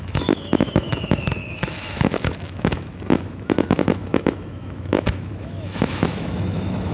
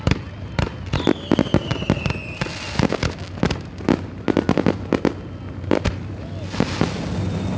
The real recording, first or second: second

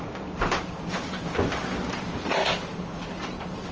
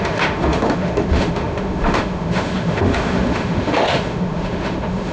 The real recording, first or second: first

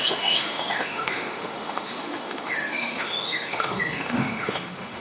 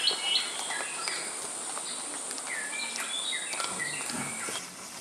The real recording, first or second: second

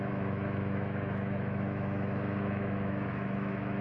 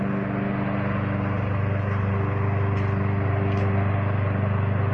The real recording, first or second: second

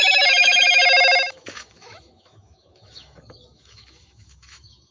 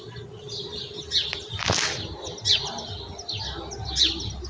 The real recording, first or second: second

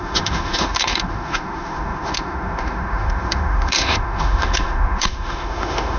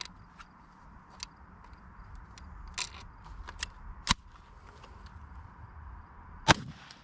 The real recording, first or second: second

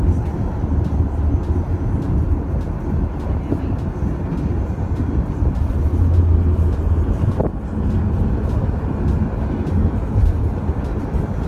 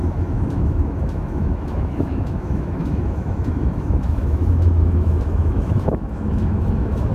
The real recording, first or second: first